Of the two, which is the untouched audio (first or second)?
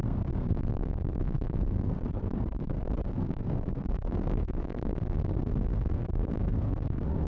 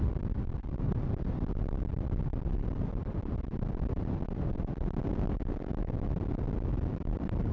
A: second